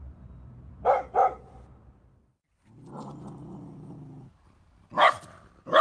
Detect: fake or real real